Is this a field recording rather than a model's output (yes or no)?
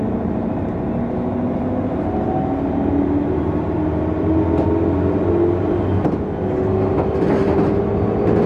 yes